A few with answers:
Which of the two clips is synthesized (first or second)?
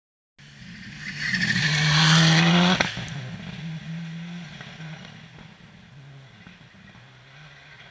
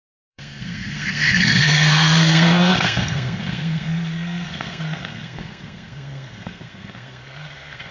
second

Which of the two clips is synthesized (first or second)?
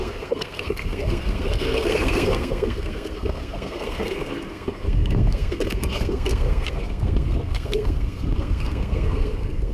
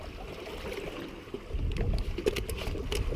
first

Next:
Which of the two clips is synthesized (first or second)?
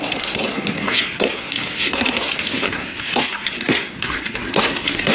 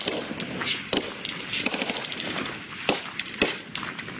first